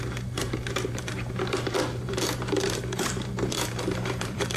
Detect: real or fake fake